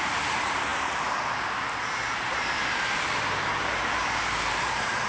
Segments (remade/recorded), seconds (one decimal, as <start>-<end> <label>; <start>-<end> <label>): 0.0-5.1 remade